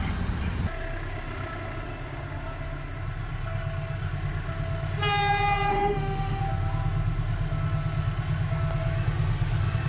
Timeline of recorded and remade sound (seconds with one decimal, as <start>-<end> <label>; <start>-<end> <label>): 0.0-5.7 recorded; 5.7-6.4 remade; 6.4-9.9 recorded